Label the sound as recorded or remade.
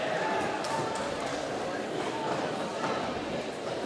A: recorded